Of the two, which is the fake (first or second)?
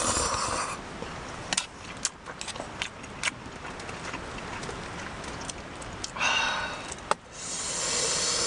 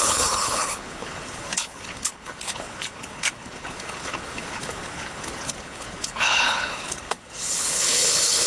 second